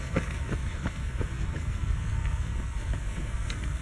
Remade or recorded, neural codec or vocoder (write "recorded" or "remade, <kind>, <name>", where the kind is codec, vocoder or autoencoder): remade, codec, SNAC